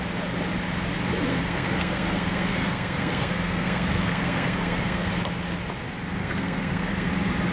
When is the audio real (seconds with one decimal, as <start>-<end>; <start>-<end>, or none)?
0.0-1.3; 5.1-6.2; 7.1-7.5